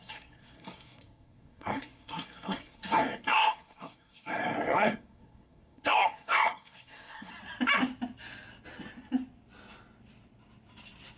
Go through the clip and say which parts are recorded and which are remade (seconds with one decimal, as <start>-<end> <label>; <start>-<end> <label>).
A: 0.0-7.3 remade; 7.3-11.2 recorded